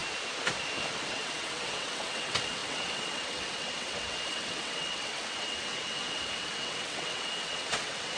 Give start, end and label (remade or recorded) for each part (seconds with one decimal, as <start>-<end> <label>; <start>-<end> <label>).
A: 0.0-1.1 recorded; 1.1-8.2 remade